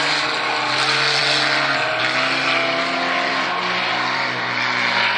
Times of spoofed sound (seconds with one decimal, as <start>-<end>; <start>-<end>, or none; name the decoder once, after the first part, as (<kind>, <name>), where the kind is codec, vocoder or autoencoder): none